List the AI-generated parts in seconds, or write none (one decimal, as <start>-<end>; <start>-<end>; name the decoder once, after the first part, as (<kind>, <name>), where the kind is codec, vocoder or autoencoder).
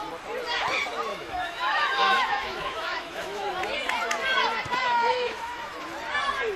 1.1-3.5 (autoencoder, DAC-VAE); 4.8-5.6